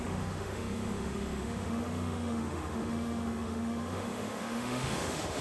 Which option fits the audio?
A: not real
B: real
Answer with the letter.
A